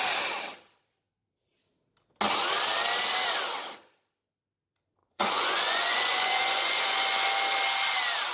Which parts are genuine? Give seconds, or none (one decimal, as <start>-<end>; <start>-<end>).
0.0-5.0; 7.3-8.3